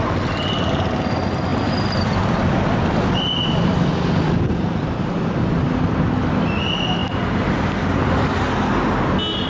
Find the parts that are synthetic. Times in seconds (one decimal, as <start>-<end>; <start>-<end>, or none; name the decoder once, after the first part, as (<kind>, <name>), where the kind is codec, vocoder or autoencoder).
1.5-4.5 (vocoder, BigVGAN v2); 7.0-8.4